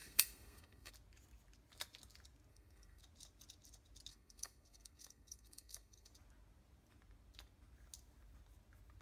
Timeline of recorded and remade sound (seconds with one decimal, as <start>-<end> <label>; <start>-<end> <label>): 0.0-0.9 remade; 0.9-2.5 recorded; 2.5-3.0 remade; 3.0-4.1 recorded; 4.1-6.1 remade; 6.1-9.0 recorded